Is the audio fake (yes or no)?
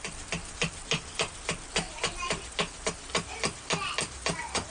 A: no